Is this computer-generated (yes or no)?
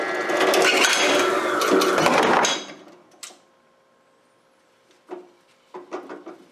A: no